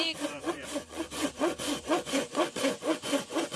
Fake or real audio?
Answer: fake